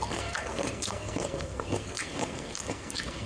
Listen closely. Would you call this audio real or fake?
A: fake